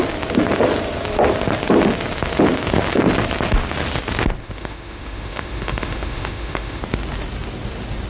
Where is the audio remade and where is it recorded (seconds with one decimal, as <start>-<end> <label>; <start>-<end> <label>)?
0.0-4.4 recorded; 4.4-6.8 remade; 6.8-8.1 recorded